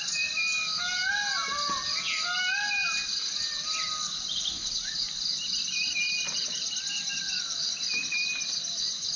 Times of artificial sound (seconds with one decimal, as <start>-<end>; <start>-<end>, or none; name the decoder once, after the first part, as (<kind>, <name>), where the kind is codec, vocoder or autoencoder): none